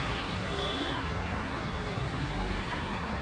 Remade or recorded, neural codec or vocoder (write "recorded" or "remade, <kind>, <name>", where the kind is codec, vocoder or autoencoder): remade, codec, SNAC